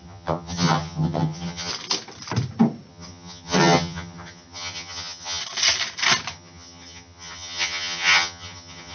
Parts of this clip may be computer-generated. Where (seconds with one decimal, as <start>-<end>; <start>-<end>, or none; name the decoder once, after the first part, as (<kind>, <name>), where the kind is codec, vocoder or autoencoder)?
0.0-1.7 (vocoder, HiFi-GAN); 2.9-5.4; 6.3-8.9